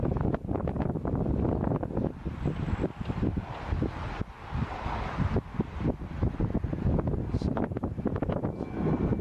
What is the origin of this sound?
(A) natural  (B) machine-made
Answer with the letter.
A